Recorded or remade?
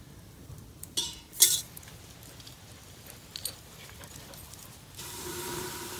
recorded